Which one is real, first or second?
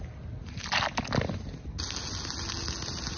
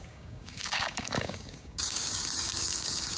first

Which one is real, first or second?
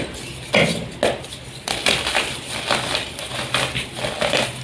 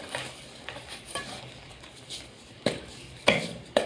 first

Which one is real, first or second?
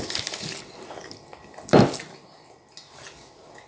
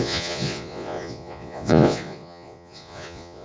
first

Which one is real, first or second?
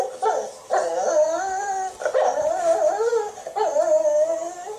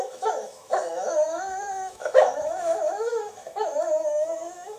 first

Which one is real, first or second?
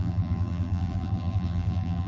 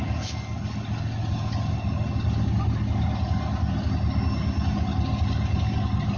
second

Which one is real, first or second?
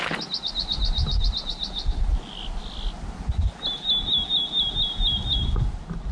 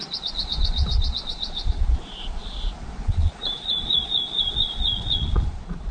first